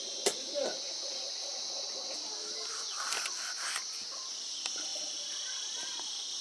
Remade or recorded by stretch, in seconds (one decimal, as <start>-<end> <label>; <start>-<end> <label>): 0.0-6.4 recorded